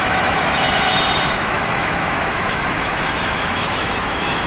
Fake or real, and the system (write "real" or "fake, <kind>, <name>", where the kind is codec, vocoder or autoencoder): fake, autoencoder, DAC-VAE